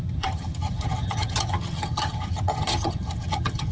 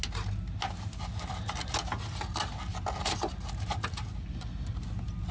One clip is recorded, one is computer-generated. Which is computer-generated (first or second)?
first